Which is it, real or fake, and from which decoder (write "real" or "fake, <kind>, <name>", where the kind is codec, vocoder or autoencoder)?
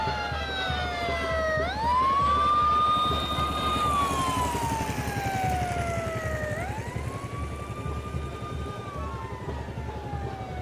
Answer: real